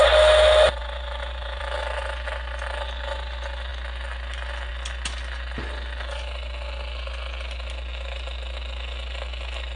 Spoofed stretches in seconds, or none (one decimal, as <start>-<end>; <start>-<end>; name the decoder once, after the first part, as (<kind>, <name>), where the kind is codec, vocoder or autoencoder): 0.8-1.6 (vocoder, BigVGAN v2)